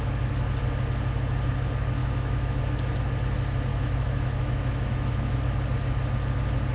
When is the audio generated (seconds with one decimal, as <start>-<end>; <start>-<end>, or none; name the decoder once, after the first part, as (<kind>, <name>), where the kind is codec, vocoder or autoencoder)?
2.0-2.6 (autoencoder, DAC-VAE); 3.7-5.4